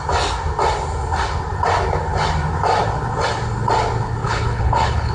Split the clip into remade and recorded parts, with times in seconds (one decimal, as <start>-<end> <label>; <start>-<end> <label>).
0.0-4.2 recorded; 4.2-5.1 remade